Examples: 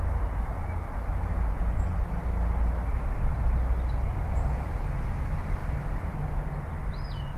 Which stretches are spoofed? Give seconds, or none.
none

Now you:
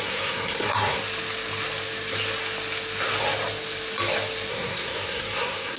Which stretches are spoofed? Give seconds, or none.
0.0-1.0 (codec, SNAC); 4.5-5.8